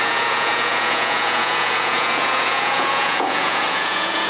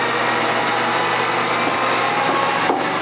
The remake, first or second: first